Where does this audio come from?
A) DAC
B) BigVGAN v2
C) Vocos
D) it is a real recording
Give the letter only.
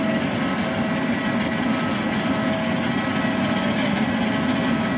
D